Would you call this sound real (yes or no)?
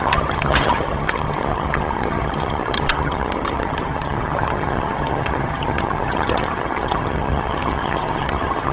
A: no